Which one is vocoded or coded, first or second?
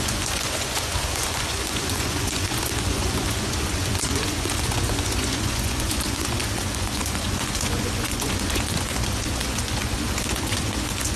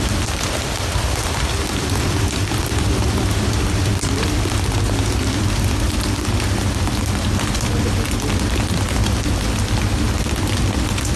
first